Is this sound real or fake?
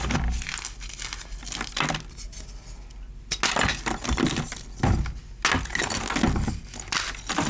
real